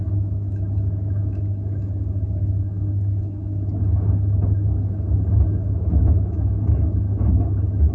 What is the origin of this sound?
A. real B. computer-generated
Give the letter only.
B